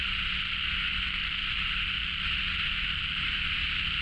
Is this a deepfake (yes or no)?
no